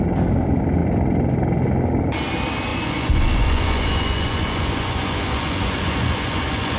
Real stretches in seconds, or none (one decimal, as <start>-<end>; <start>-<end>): 0.0-2.7